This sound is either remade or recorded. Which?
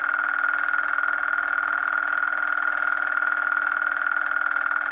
recorded